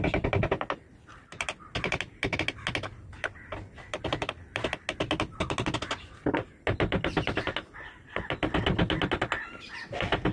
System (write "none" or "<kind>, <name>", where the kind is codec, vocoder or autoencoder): none